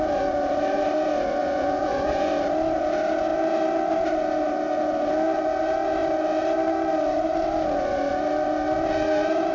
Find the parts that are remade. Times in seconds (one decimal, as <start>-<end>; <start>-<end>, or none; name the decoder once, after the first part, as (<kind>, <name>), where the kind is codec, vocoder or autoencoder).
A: 1.4-2.3 (vocoder, Vocos)